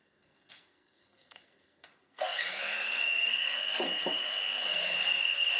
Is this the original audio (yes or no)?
no